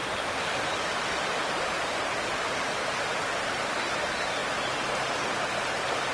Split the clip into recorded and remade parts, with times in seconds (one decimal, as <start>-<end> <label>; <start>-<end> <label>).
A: 0.0-3.7 remade; 3.7-6.1 recorded